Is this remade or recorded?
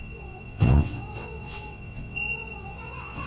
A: remade